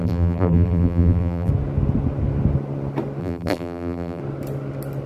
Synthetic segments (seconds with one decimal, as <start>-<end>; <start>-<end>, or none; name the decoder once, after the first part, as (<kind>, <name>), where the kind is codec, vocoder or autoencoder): 0.0-1.5 (vocoder, BigVGAN v2); 3.2-4.2